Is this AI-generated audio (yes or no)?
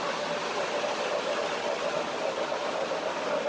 no